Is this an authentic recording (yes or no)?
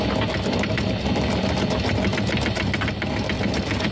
yes